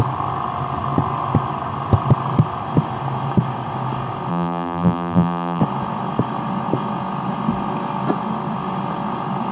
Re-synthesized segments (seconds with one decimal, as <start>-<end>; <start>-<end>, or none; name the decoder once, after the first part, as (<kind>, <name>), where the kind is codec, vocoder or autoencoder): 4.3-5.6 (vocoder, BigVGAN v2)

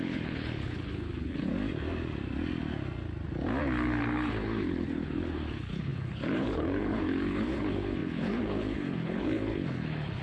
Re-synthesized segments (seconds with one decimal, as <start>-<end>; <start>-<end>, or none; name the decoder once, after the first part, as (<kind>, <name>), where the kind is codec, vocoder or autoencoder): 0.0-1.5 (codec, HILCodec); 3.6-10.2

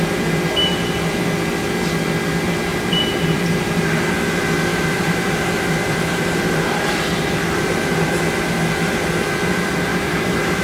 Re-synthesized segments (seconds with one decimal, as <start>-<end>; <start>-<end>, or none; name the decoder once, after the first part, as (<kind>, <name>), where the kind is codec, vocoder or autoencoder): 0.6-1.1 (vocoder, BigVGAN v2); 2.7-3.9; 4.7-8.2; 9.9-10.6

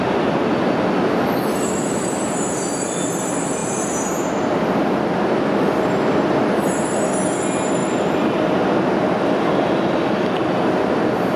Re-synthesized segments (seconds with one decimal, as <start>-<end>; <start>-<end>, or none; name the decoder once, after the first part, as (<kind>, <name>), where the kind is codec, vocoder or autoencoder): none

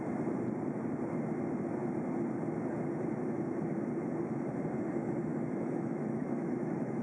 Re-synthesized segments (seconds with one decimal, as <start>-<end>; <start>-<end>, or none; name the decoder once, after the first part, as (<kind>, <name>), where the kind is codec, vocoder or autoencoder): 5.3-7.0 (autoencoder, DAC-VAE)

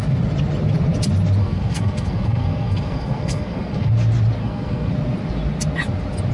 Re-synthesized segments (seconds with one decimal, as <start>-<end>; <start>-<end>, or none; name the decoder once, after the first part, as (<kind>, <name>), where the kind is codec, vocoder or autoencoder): 1.4-3.9 (codec, SNAC); 4.4-4.9